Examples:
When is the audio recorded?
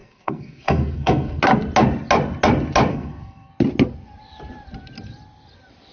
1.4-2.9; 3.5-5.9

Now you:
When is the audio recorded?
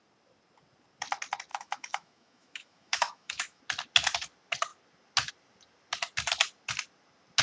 0.0-1.5; 3.6-7.4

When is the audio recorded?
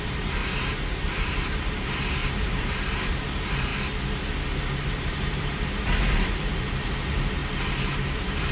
0.4-0.9; 3.7-4.8; 7.4-7.9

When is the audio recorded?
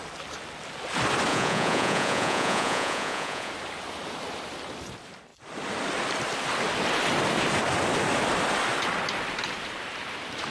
0.0-1.3; 3.5-10.5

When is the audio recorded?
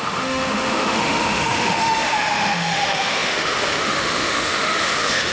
none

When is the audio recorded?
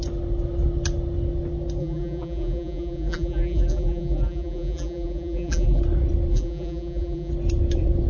0.0-1.8; 5.8-6.3; 7.3-8.1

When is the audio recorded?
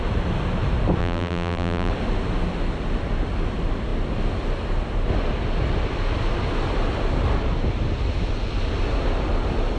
0.0-1.0; 1.9-9.8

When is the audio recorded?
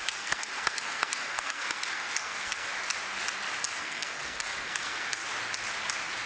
2.7-3.8; 5.2-6.3